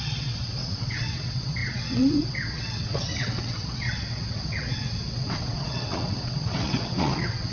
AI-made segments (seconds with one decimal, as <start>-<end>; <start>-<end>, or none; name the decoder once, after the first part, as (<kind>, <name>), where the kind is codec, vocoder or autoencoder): 0.0-7.5 (vocoder, WaveNeXt)